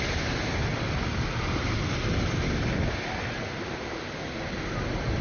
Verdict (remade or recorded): recorded